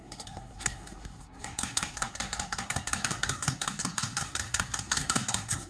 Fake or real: fake